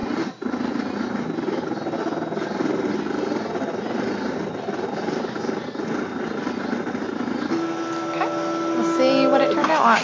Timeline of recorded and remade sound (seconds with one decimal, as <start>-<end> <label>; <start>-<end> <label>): 0.0-10.0 recorded